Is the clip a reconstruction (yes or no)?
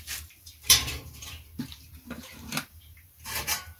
yes